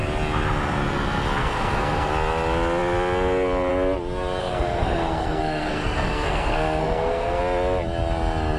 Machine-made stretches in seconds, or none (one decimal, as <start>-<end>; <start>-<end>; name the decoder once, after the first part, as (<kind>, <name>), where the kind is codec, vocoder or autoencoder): 1.4-2.1 (codec, SNAC); 4.4-7.4